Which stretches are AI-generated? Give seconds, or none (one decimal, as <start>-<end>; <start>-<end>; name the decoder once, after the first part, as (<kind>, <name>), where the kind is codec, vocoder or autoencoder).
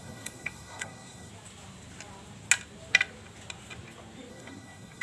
0.0-1.3 (codec, SNAC); 4.3-5.0